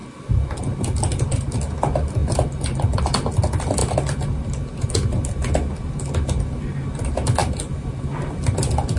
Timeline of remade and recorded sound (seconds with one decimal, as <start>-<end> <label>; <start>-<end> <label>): 0.0-2.2 recorded; 2.2-3.0 remade; 3.0-7.4 recorded; 7.4-9.0 remade